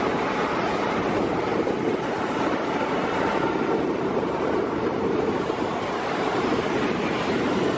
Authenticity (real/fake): fake